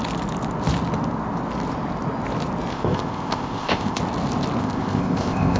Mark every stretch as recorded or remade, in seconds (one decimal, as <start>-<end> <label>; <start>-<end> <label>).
0.0-2.7 recorded; 2.7-4.0 remade; 4.0-4.6 recorded; 4.6-5.6 remade